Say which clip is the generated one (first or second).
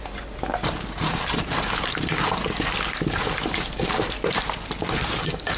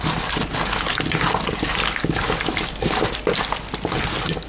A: first